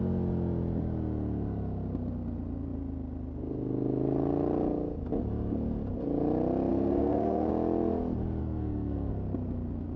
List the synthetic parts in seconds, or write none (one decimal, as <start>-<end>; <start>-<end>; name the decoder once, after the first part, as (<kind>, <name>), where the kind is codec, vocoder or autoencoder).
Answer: 6.7-7.5 (codec, SNAC); 8.4-9.1